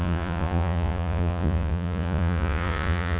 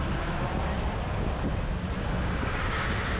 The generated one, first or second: first